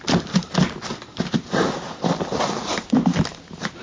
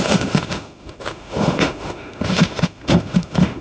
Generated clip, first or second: second